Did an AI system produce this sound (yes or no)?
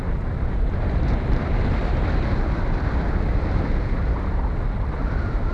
no